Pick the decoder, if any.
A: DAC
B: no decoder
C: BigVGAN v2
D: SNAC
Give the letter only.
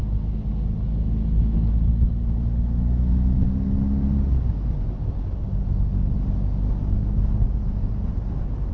B